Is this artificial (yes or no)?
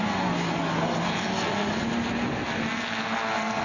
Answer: no